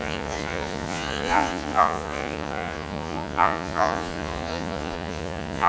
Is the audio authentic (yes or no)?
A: no